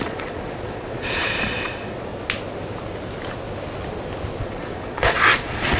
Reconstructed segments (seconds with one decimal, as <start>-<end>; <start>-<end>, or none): 0.0-2.1; 4.4-5.8